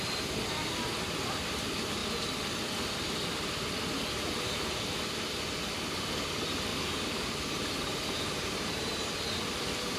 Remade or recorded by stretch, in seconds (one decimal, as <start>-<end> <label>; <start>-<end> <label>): 0.0-6.7 recorded; 6.7-9.4 remade; 9.4-10.0 recorded